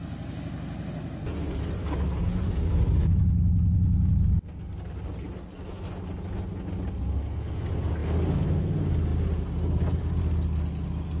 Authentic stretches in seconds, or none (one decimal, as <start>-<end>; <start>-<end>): 0.0-11.2